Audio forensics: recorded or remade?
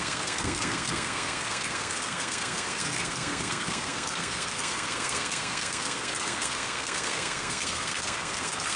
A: remade